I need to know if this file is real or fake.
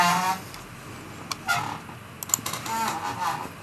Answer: real